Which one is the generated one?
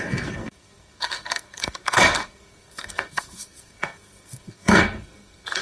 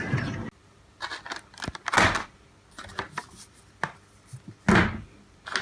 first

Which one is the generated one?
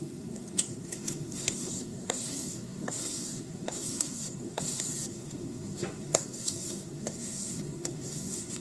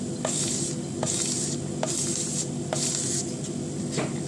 first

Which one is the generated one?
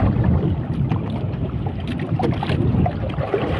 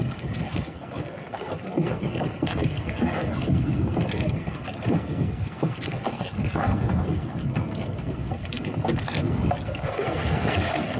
second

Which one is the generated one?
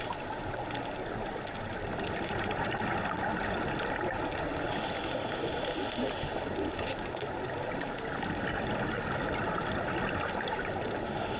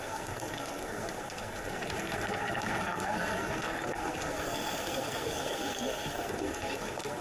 second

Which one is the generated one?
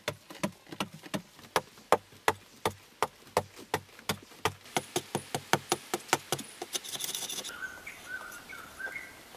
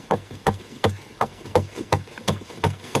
second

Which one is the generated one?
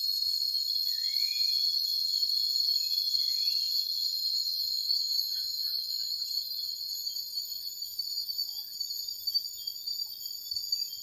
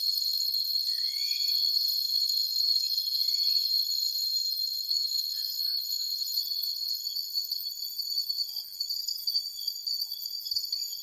second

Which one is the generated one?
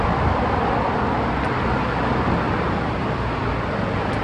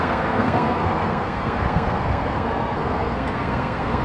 second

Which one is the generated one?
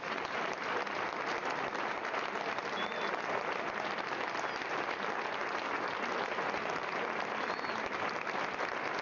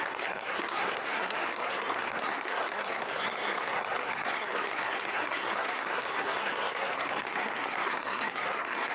second